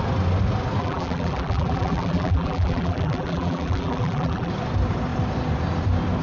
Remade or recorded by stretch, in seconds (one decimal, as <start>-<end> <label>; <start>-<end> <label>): 0.0-0.8 recorded; 0.8-4.5 remade; 4.5-6.2 recorded